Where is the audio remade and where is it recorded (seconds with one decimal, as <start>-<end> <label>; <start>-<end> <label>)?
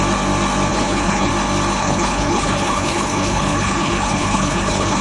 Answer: 0.0-0.7 recorded; 0.7-1.3 remade; 1.3-1.8 recorded; 1.8-5.0 remade